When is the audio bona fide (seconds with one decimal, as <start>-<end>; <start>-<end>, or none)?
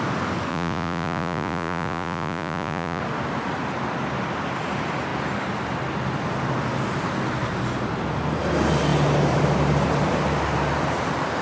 0.0-0.5; 3.0-11.4